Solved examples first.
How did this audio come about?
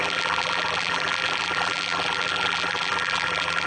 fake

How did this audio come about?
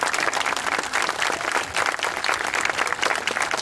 real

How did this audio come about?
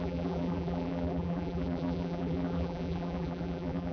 fake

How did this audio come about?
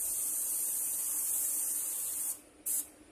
real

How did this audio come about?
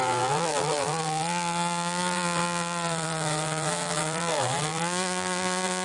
fake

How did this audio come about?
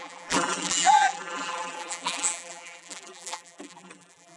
fake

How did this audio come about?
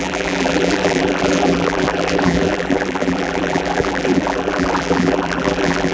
fake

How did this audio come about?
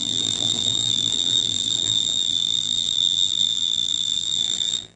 fake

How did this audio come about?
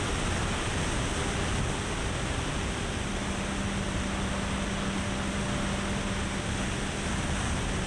real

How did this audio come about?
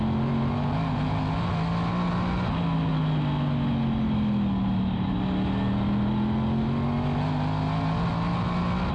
real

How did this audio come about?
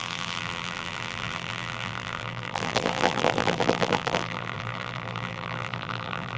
fake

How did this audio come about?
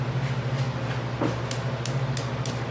real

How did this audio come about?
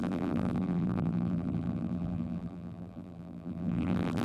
fake